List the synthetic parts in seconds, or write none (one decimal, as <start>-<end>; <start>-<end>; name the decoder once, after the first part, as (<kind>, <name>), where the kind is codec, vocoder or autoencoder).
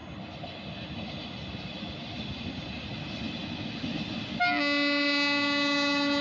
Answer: none